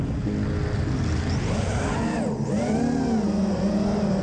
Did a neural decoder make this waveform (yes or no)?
no